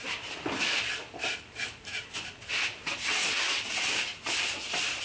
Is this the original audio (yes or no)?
no